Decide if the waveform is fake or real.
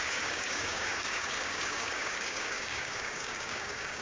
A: fake